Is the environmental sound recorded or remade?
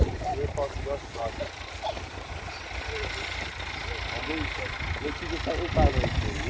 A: recorded